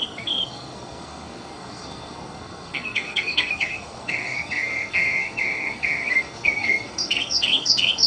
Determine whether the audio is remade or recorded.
remade